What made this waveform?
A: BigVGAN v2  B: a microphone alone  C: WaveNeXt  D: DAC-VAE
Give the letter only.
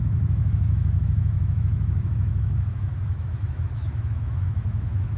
D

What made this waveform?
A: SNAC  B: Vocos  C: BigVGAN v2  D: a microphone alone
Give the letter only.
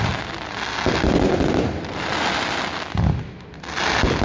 D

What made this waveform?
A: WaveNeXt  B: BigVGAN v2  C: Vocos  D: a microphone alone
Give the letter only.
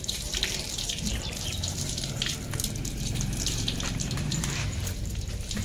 B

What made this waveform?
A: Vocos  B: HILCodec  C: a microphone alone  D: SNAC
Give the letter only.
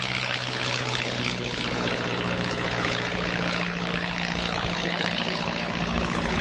B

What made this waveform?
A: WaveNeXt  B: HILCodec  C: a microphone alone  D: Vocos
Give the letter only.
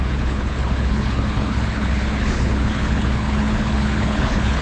B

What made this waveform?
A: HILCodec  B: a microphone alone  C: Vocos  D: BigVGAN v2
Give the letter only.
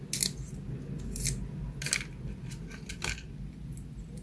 B